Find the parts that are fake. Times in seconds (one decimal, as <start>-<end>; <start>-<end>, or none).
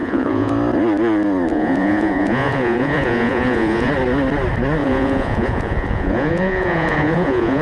0.0-0.5; 1.5-3.9; 4.8-7.6